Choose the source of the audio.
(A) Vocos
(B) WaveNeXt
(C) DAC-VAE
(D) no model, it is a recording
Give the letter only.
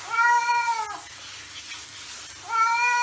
D